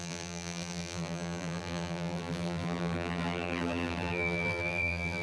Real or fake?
fake